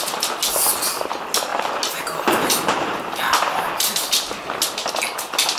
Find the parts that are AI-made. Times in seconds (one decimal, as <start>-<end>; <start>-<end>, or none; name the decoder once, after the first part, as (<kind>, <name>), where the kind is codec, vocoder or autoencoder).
none